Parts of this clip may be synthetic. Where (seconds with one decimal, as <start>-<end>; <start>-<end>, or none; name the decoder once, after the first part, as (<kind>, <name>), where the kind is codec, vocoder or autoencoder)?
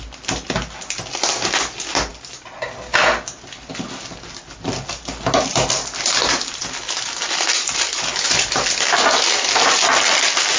7.5-8.1 (vocoder, BigVGAN v2)